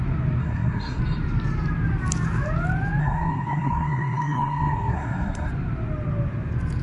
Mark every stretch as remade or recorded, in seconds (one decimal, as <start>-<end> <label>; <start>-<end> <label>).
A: 0.0-0.4 recorded; 0.4-1.0 remade; 1.0-3.0 recorded; 3.0-5.5 remade; 5.5-6.8 recorded